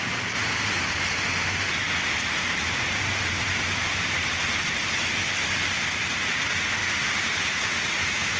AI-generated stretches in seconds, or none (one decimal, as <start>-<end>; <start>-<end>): 0.0-0.4; 2.1-4.4; 5.6-6.8

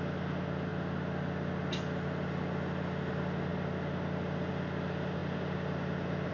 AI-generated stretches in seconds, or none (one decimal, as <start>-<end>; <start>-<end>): none

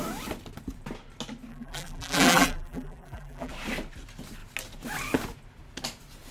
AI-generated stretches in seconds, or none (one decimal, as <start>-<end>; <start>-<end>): 1.5-3.5

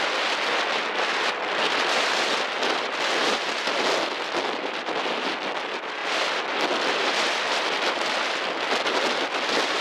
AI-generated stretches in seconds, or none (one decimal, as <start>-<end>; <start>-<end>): none

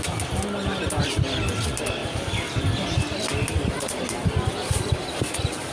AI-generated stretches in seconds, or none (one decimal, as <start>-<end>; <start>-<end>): none

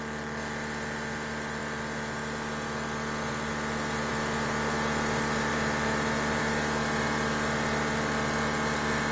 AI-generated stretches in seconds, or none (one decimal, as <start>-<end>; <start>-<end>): 5.5-6.4

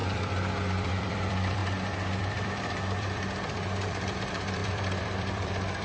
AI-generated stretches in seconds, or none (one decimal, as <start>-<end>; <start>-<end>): 0.0-1.6; 2.2-5.8